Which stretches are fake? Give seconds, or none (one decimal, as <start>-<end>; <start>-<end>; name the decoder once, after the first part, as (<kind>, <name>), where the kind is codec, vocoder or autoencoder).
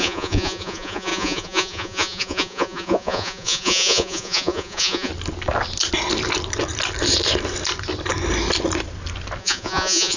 0.0-5.1 (vocoder, Vocos); 9.4-10.2